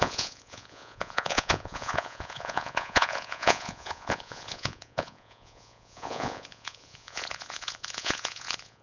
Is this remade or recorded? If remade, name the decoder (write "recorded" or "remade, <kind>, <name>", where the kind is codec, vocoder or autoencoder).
remade, vocoder, Vocos